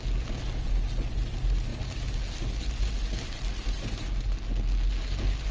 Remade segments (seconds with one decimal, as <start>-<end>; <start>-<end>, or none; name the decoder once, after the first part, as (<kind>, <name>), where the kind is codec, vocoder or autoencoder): none